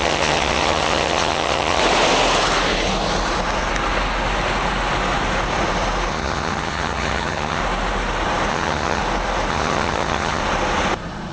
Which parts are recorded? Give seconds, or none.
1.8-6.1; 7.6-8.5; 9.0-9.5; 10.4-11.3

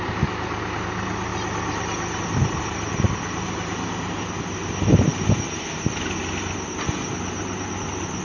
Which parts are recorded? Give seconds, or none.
0.0-8.2

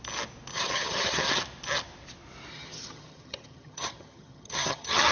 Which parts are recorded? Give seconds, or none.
0.0-0.5; 1.3-2.5

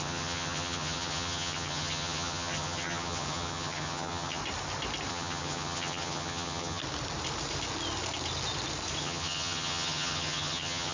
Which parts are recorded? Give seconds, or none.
4.4-5.1; 6.8-9.0

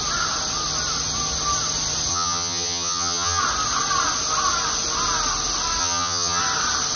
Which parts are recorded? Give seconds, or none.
0.0-2.1; 3.4-5.8; 6.4-7.0

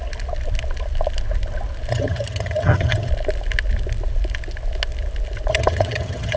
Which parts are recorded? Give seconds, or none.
0.0-1.9; 3.1-5.5